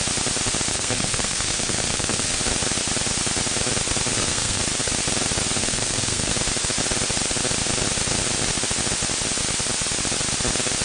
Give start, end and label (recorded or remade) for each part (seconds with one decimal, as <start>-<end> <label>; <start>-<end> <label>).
0.0-0.7 recorded; 0.7-2.4 remade; 2.4-4.1 recorded; 4.1-4.6 remade; 4.6-5.6 recorded; 5.6-6.3 remade; 6.3-10.8 recorded